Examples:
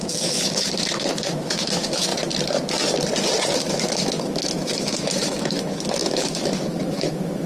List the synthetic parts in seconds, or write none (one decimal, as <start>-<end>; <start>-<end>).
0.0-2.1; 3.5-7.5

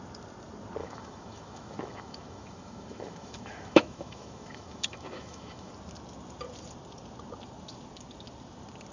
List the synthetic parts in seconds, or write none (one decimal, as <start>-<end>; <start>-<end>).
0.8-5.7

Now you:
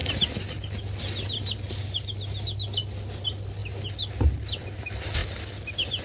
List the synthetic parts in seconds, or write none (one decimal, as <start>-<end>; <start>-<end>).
none

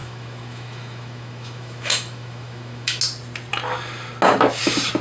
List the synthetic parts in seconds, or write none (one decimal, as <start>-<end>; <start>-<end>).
0.0-3.0

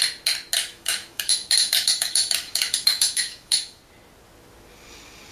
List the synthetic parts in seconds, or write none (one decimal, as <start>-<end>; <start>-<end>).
0.6-3.8

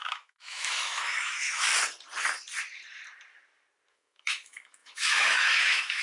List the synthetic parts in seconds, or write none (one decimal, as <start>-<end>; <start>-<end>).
0.0-1.7; 3.9-6.0